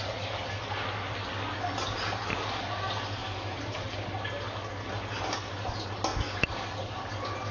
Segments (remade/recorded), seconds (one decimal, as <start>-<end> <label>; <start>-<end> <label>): 0.0-3.2 recorded; 3.2-3.9 remade; 3.9-6.1 recorded; 6.1-7.0 remade; 7.0-7.5 recorded